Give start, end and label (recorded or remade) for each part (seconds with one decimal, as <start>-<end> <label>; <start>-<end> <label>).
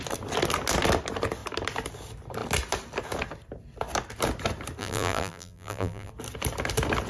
0.0-4.8 recorded; 4.8-6.1 remade; 6.1-7.1 recorded